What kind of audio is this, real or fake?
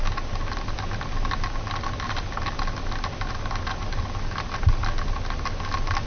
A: real